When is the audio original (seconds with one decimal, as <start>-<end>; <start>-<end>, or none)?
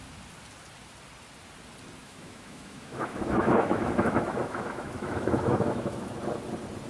0.0-2.0; 6.1-6.9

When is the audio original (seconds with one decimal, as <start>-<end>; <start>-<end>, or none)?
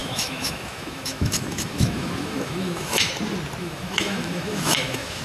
3.1-3.6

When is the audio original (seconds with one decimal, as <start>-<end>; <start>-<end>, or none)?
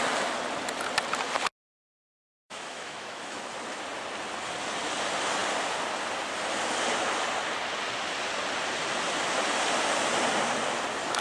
0.0-2.0; 3.5-11.2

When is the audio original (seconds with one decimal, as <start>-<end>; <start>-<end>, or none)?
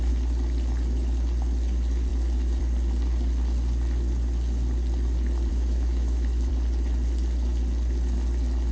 0.0-5.5; 6.5-8.7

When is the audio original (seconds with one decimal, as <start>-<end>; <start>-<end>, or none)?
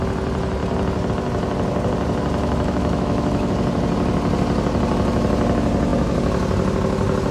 0.0-2.4; 3.5-7.3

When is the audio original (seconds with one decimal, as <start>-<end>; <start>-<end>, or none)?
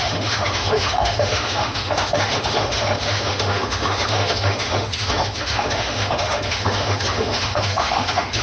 none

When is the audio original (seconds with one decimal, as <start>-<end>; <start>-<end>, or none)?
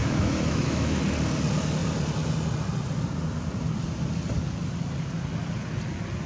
1.0-6.3